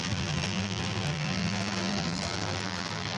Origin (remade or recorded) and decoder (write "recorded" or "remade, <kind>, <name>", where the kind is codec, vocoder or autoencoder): remade, vocoder, BigVGAN v2